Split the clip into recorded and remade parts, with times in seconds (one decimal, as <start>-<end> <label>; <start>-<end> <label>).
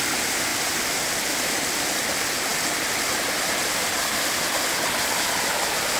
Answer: 0.0-6.0 recorded